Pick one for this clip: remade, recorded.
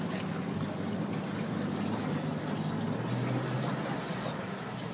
recorded